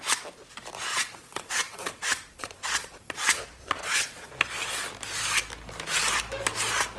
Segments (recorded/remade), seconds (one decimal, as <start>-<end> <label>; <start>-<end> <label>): 0.0-0.9 recorded; 0.9-4.3 remade; 4.3-7.0 recorded